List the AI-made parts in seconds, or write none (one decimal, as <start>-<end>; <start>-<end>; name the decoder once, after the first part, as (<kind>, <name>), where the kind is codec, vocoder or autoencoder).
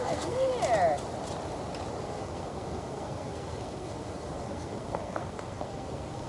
0.0-0.5 (codec, SNAC); 2.0-6.3